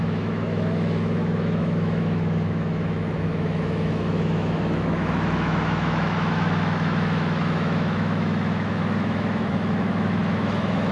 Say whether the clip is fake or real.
fake